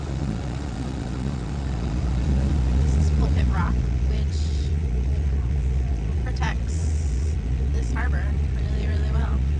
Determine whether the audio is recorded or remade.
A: remade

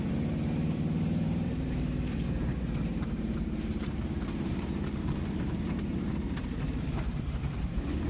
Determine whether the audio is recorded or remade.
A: remade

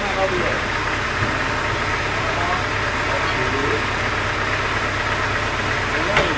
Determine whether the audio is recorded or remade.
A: recorded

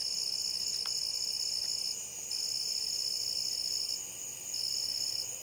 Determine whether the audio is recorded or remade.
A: recorded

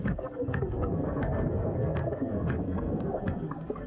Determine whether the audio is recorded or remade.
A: remade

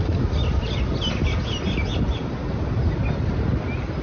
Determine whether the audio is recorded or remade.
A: recorded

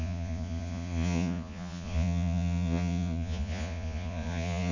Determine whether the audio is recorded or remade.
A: remade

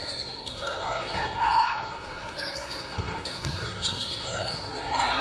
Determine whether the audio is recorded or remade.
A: remade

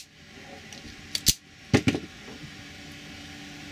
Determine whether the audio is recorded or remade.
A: recorded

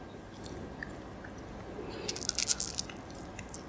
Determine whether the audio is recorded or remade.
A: recorded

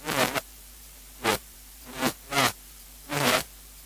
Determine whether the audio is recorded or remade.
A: remade